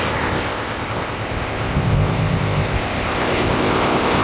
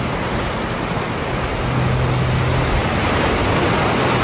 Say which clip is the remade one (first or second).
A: first